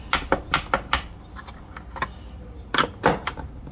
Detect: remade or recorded recorded